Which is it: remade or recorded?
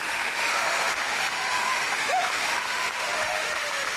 remade